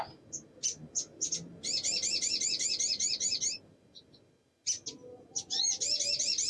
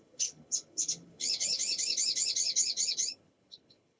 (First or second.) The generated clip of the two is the second